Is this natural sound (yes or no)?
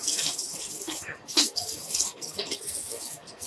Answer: no